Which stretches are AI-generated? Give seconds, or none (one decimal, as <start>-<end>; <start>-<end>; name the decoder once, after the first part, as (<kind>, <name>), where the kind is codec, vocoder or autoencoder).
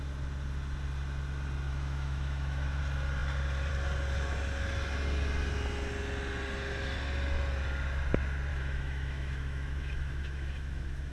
1.7-2.8 (autoencoder, DAC-VAE); 8.5-11.1